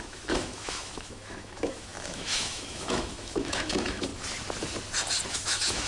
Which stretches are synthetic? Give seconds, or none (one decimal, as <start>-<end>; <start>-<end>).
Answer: 0.0-4.1; 5.3-5.9